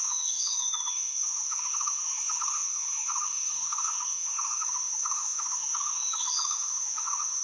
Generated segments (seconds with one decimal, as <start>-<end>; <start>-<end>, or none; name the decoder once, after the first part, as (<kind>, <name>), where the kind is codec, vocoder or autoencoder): 0.0-7.4 (autoencoder, DAC-VAE)